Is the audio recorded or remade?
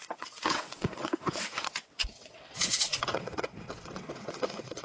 remade